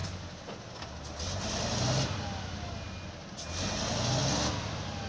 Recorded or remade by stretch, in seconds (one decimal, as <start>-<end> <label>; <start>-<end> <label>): 0.0-5.1 recorded